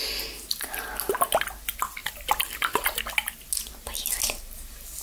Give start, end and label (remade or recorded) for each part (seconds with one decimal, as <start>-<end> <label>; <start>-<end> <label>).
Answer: 0.0-2.0 recorded; 2.0-3.0 remade; 3.0-5.0 recorded